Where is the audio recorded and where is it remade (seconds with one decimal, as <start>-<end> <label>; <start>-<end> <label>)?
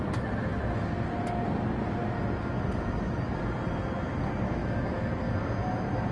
0.0-4.6 recorded; 4.6-5.2 remade; 5.2-6.1 recorded